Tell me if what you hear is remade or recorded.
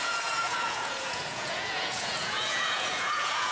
remade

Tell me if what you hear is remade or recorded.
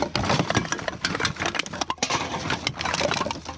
recorded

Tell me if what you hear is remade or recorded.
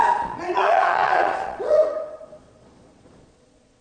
remade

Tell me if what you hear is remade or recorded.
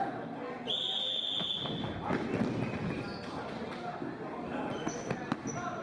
recorded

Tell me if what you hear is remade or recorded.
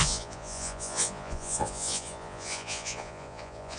remade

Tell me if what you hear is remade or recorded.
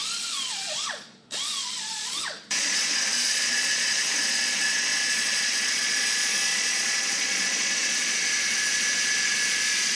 remade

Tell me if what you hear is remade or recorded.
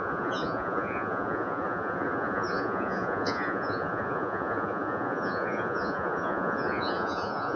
remade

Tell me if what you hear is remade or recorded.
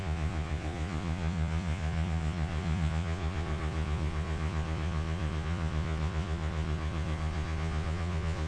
remade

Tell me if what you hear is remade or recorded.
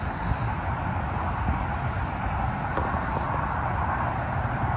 recorded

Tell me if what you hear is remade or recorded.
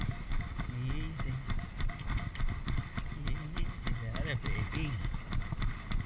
recorded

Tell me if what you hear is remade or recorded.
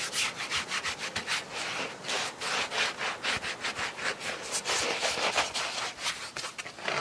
recorded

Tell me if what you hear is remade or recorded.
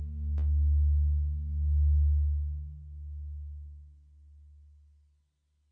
recorded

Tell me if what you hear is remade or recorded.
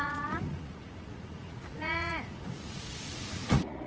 remade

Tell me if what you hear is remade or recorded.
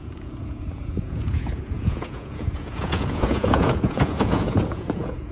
remade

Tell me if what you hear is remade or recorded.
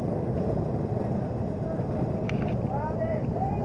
recorded